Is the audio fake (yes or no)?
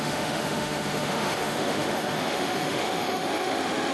yes